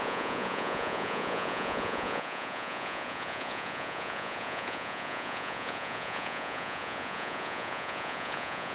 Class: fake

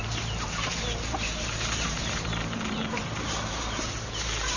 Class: fake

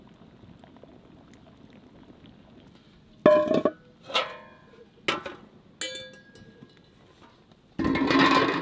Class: real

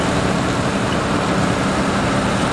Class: fake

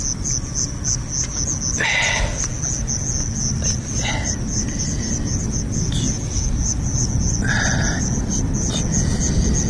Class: real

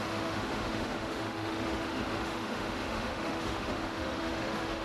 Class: fake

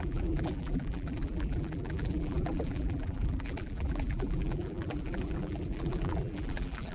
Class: fake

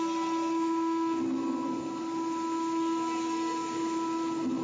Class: real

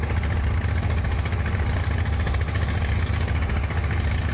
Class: real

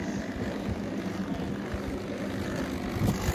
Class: real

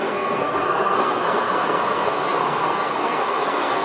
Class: fake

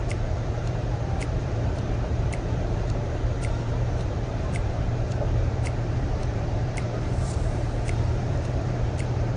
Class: fake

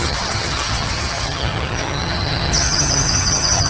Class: fake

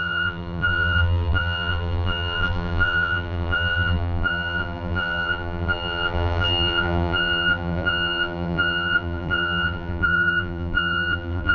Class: fake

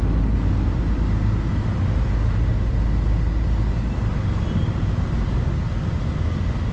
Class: real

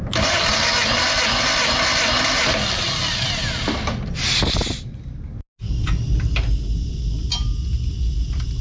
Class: real